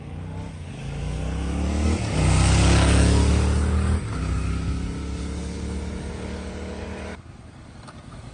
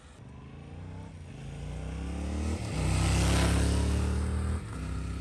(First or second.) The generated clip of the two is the first